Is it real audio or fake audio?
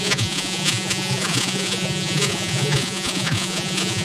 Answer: fake